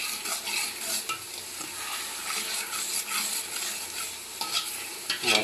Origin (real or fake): real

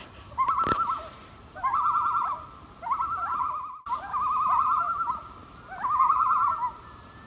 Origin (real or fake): real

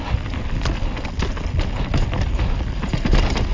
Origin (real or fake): real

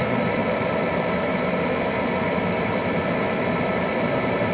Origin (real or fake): real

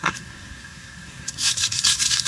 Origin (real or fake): fake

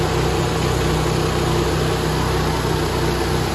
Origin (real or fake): real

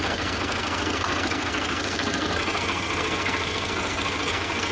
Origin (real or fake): fake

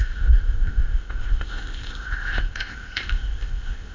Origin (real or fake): fake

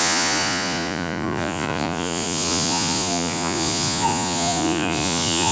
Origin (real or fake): fake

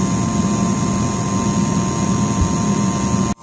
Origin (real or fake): real